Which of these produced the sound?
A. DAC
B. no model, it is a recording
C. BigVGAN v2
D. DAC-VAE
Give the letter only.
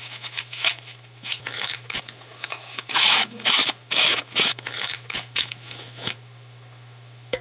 D